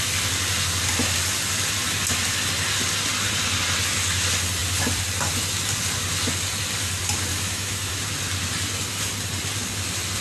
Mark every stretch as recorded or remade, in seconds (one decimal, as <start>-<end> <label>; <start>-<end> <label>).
0.0-7.3 recorded; 7.3-8.0 remade; 8.0-10.2 recorded